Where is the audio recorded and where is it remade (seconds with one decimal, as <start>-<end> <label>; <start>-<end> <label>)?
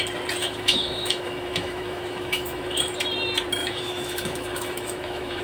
0.0-0.4 recorded; 0.4-2.9 remade; 2.9-3.6 recorded; 3.6-5.4 remade